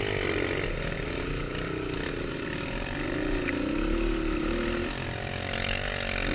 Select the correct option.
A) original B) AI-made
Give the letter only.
A